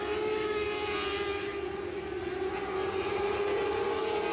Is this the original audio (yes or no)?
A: yes